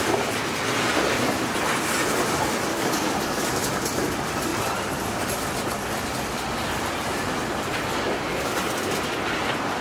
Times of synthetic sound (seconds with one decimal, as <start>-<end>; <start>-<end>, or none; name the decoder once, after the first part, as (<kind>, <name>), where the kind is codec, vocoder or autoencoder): 2.7-3.5 (codec, DAC)